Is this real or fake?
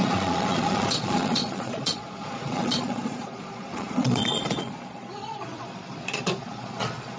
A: fake